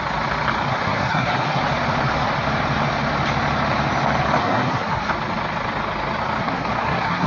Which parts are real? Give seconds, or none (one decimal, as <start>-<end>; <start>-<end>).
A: 0.0-0.7; 1.6-4.4; 5.1-6.4